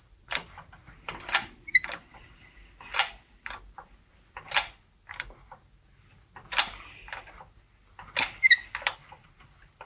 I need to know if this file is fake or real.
real